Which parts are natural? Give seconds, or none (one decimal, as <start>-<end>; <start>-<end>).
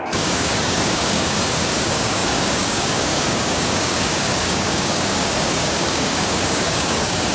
none